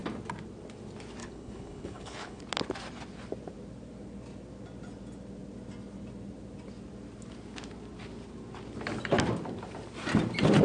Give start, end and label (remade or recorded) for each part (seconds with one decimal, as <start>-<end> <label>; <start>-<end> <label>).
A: 0.0-1.2 recorded; 1.2-2.4 remade; 2.4-10.6 recorded

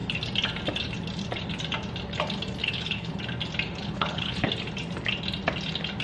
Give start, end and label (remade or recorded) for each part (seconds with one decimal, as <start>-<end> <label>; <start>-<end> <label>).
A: 0.0-2.6 recorded; 2.6-3.2 remade; 3.2-3.8 recorded; 3.8-4.5 remade; 4.5-6.0 recorded

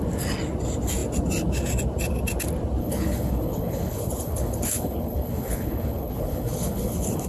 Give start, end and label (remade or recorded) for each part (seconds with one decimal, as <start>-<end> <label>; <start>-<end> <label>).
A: 0.0-2.8 recorded; 2.8-7.3 remade

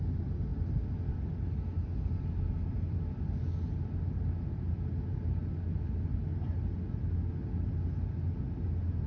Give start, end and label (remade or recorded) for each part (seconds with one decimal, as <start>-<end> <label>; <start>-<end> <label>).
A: 0.0-9.1 recorded